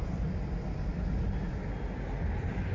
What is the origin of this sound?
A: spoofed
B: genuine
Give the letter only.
B